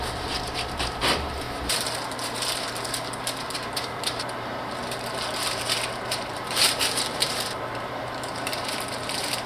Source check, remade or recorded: remade